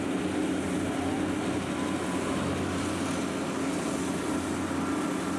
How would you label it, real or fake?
real